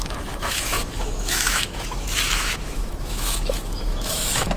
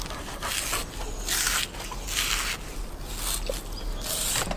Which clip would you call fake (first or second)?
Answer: first